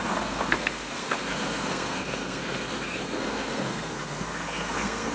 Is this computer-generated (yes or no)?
yes